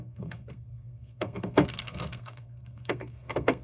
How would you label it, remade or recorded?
remade